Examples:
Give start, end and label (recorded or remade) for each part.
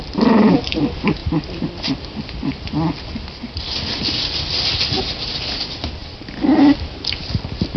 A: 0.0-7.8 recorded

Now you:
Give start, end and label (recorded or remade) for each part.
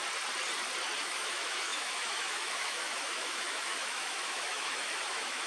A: 0.0-1.0 recorded; 1.0-5.5 remade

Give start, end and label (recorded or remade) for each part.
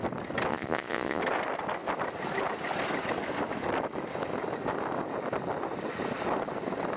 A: 0.0-0.5 recorded; 0.5-1.2 remade; 1.2-7.0 recorded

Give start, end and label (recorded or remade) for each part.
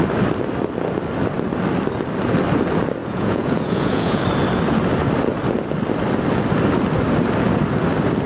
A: 0.0-3.0 recorded; 3.0-4.2 remade; 4.2-8.3 recorded